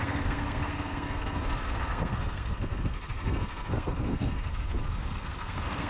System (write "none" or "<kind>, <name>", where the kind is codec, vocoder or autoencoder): codec, SNAC